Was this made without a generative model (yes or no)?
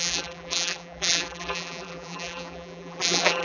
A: no